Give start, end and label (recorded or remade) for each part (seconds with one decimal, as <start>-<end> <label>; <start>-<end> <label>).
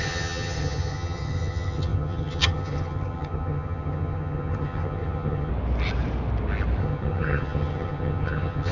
0.0-5.5 remade; 5.5-6.8 recorded; 6.8-8.7 remade